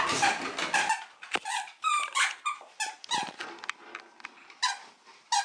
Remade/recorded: recorded